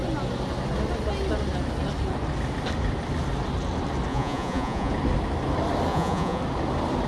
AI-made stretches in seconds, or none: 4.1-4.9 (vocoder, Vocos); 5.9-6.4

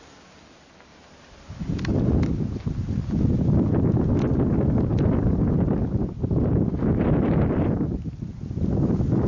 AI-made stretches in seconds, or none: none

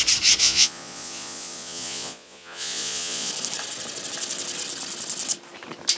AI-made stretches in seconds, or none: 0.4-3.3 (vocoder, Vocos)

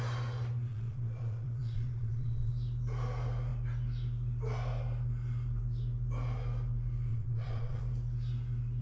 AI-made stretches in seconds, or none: 0.7-2.5 (vocoder, Vocos); 7.1-7.8

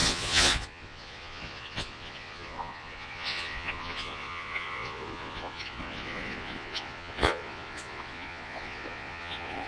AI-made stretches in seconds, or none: 0.0-9.7 (vocoder, Vocos)

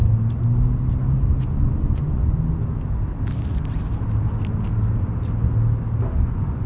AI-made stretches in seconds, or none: 1.4-2.2 (vocoder, Vocos); 6.2-6.7

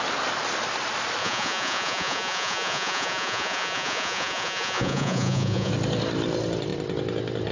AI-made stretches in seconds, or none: 1.2-5.7 (vocoder, Vocos)